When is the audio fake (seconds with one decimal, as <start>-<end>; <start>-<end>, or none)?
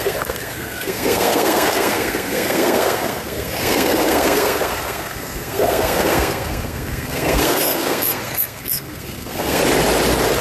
0.0-9.6